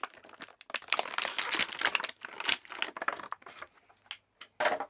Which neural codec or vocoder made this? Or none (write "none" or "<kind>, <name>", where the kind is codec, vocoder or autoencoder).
none